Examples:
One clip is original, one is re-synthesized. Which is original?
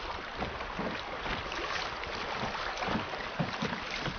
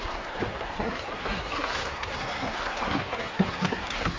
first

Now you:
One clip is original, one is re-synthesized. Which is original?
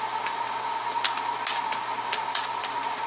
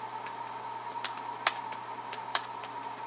first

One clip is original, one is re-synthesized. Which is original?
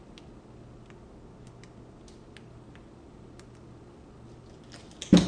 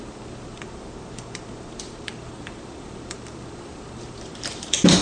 first